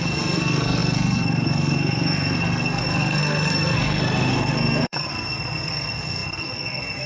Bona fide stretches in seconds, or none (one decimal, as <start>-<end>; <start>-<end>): none